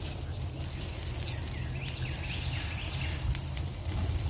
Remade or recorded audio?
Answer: recorded